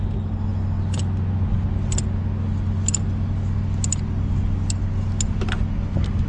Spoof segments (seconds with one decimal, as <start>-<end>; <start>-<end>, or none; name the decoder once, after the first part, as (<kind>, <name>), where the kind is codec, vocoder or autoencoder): none